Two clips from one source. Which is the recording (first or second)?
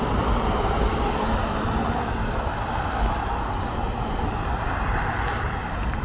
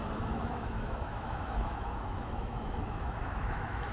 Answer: first